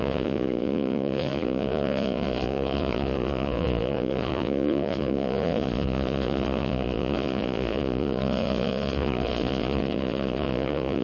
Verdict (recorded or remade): remade